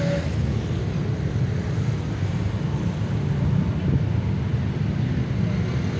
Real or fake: real